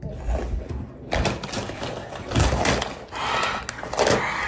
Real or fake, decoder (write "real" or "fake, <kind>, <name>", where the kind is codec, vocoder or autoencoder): real